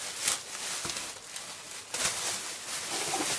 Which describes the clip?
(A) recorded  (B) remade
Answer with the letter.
A